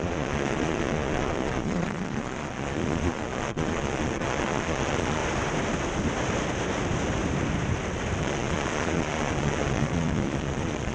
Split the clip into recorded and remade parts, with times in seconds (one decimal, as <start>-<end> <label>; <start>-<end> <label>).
0.0-5.2 remade; 5.2-8.2 recorded; 8.2-10.9 remade